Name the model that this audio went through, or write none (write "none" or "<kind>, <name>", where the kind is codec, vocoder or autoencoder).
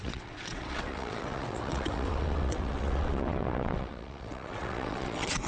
vocoder, WaveNeXt